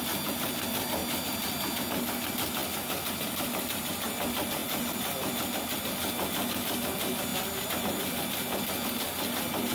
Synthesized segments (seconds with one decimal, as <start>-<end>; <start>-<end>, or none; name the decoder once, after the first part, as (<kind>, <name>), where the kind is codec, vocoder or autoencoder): none